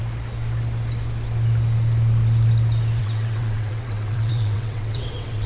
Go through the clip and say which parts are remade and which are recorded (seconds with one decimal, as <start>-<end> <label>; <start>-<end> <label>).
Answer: 0.0-3.0 recorded; 3.0-5.5 remade